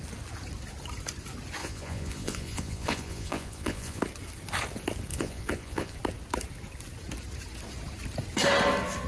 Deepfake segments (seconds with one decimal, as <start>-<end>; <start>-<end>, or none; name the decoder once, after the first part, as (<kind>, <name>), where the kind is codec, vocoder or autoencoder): 1.6-4.0 (vocoder, Vocos); 5.1-6.0

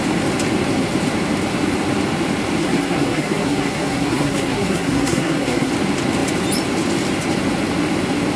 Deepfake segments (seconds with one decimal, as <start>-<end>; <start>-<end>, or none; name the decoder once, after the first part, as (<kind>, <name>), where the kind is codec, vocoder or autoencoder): 2.6-5.7 (codec, SNAC)

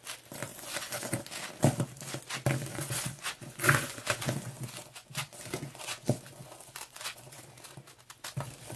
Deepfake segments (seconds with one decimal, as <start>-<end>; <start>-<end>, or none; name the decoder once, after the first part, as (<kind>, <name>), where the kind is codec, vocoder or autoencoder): 0.5-1.2 (vocoder, Vocos); 2.7-7.4

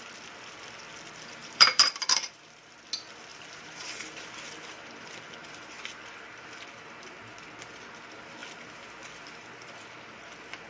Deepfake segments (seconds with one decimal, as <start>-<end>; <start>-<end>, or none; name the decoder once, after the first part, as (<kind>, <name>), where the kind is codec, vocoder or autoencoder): 1.4-2.7 (vocoder, BigVGAN v2); 3.3-4.2

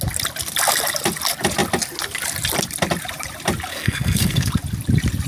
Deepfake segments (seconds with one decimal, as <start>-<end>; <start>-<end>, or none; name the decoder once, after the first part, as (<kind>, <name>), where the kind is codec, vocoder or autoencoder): 3.7-4.5 (codec, SNAC)

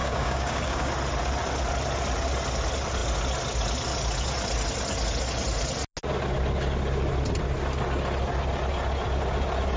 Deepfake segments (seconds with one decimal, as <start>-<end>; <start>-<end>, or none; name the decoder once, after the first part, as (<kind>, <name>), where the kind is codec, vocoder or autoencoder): 0.0-0.9 (codec, DAC)

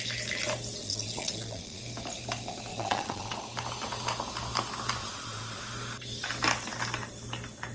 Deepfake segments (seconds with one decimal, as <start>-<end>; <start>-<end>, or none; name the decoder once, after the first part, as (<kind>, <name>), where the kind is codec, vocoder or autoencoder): 0.8-1.8 (vocoder, Vocos); 2.7-3.3; 5.0-5.6

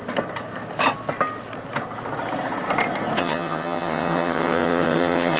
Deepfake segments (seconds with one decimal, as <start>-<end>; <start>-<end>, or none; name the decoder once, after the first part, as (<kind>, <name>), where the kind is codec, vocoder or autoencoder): 3.2-5.4 (vocoder, HiFi-GAN)